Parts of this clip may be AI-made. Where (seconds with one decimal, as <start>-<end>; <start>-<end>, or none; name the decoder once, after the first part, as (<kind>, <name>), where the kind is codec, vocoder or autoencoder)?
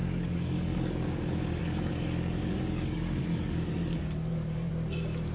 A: 0.0-1.2 (codec, DAC); 1.6-4.7